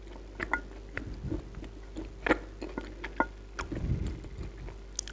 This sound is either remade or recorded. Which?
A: recorded